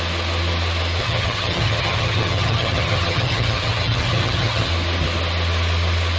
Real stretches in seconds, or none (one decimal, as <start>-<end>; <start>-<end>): 0.0-1.0; 4.7-6.2

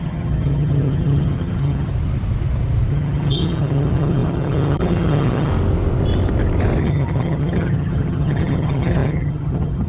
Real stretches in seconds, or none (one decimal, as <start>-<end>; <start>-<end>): 1.9-2.9; 5.5-6.8

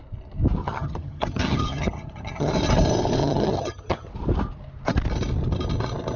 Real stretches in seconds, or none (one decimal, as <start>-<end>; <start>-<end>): 0.0-0.6; 2.5-3.2; 4.1-6.2

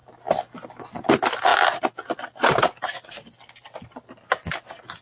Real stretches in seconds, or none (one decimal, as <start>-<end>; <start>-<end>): 0.0-5.0

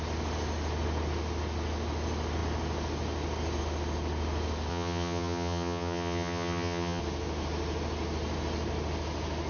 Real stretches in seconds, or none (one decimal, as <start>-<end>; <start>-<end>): 0.0-4.7; 7.0-9.5

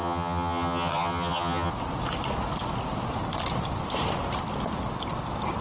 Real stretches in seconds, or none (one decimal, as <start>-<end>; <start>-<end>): 1.7-5.6

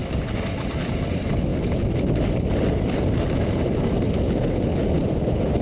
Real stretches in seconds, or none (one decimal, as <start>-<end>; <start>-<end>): 0.0-5.6

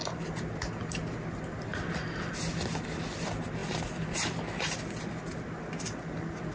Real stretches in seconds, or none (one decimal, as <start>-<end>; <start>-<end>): 0.0-6.5